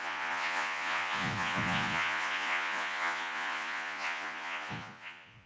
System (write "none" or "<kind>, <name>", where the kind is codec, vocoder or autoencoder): vocoder, Vocos